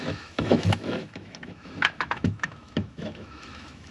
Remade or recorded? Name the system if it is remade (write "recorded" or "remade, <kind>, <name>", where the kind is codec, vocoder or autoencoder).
remade, autoencoder, DAC-VAE